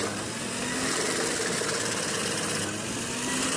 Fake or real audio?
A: real